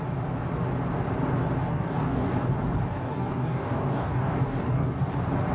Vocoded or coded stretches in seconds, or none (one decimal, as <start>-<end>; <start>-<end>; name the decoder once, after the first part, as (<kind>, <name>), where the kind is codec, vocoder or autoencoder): 1.7-2.3 (codec, DAC); 2.9-5.1